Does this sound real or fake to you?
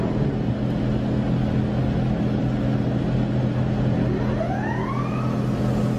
real